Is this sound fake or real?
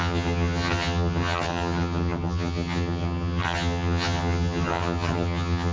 fake